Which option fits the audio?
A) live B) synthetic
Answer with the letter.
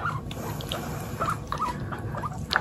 A